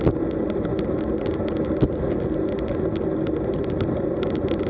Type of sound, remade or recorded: recorded